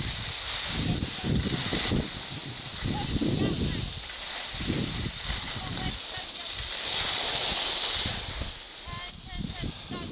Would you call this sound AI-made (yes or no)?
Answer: no